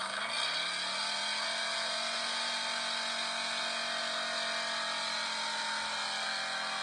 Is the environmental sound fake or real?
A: real